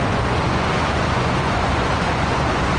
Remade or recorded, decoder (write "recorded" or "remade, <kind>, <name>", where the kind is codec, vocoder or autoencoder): remade, vocoder, Vocos